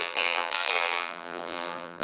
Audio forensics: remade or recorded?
remade